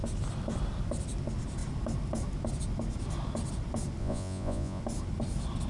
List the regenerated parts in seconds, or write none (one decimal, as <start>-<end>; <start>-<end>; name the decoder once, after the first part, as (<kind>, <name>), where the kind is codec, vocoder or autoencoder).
4.0-4.8 (vocoder, Vocos)

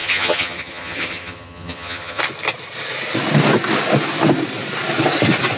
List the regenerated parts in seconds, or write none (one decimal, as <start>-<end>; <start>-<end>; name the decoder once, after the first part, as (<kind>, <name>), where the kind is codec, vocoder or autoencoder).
0.0-2.2 (vocoder, HiFi-GAN)

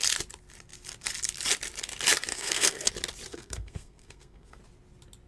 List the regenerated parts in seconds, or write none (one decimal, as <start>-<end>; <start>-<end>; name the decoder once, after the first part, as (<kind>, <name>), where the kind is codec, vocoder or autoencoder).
2.3-2.9 (codec, SNAC); 3.3-4.6

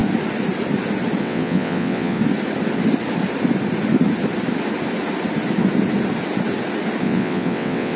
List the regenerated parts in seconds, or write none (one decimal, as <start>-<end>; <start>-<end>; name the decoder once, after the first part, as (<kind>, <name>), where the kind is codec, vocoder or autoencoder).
1.2-2.2 (vocoder, WaveNeXt); 7.0-8.0

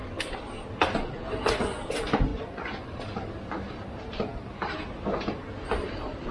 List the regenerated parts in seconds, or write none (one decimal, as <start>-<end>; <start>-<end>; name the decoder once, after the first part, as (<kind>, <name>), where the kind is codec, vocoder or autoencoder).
2.3-2.8 (vocoder, Vocos)

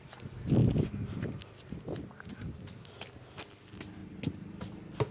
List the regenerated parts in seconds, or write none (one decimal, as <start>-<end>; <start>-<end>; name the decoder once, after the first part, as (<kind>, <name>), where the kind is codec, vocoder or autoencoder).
none

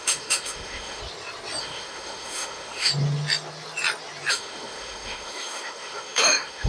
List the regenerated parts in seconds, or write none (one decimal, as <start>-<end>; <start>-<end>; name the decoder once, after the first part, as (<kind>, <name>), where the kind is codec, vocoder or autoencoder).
0.0-1.0 (autoencoder, DAC-VAE); 1.6-2.9; 4.3-6.7